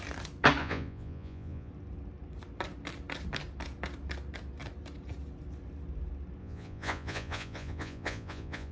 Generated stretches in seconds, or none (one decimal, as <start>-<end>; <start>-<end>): 0.6-1.7; 6.4-8.7